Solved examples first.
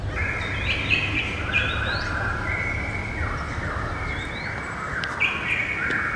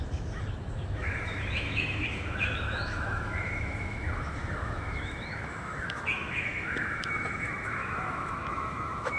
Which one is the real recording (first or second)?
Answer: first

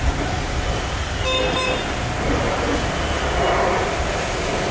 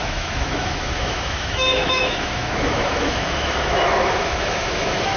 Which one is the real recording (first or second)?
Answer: first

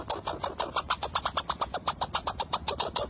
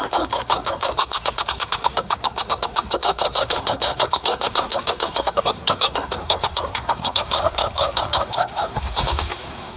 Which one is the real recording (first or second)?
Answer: first